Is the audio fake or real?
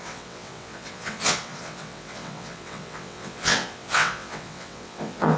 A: fake